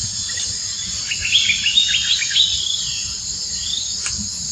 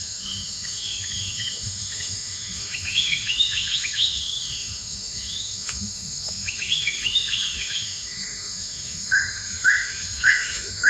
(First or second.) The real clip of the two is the first